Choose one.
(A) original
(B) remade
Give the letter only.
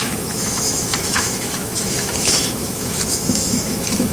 B